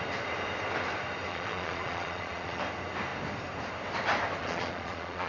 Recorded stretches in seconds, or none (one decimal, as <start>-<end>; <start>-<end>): 0.0-1.3; 2.6-4.4

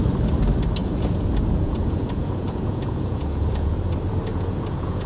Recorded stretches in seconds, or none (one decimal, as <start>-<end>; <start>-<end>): 0.0-0.8; 3.9-4.3

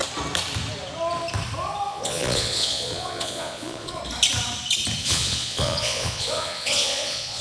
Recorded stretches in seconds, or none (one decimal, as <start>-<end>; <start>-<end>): 0.0-1.9; 4.0-5.0

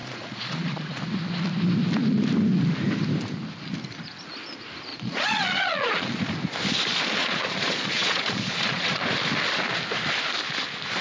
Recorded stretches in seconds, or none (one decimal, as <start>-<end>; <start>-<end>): 1.0-4.9; 6.2-7.2; 9.0-11.0

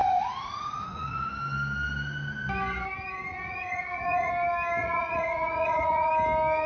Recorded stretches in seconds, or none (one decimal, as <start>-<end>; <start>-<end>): 1.3-3.3; 4.3-4.8; 6.1-6.7